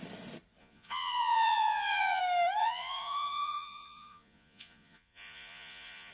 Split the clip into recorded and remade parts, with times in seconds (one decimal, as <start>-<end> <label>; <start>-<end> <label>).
0.0-0.6 recorded; 0.6-2.2 remade; 2.2-2.6 recorded; 2.6-6.1 remade